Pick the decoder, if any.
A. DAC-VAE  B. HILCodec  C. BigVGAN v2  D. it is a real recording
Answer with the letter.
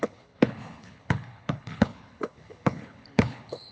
B